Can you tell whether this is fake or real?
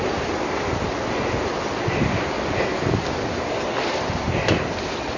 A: real